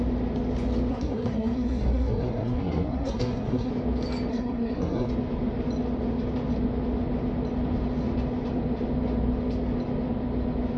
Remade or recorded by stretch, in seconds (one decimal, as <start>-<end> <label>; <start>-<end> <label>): 0.0-0.9 recorded; 0.9-3.7 remade; 3.7-4.3 recorded; 4.3-5.1 remade; 5.1-10.8 recorded